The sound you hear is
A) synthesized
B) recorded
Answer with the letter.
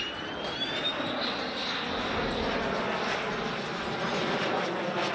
B